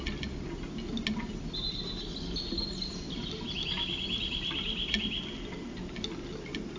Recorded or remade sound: recorded